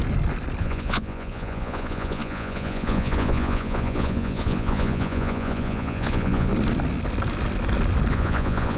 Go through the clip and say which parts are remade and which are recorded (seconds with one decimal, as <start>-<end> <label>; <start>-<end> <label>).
0.0-0.6 recorded; 0.6-6.5 remade; 6.5-8.1 recorded; 8.1-8.8 remade